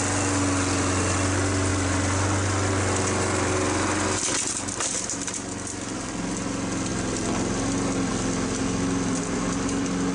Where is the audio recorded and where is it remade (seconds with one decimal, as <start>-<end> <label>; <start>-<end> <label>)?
0.0-10.1 recorded